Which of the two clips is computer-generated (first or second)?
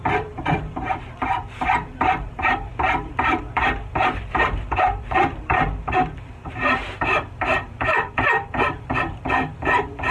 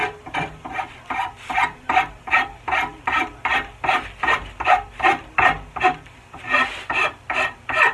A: first